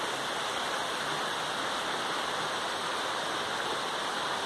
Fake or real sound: real